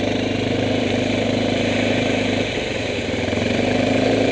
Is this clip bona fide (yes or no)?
no